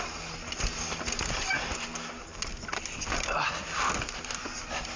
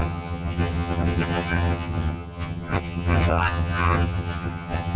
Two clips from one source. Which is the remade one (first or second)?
second